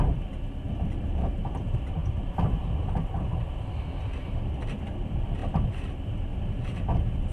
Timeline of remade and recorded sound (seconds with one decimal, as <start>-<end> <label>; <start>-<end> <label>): 0.0-7.3 remade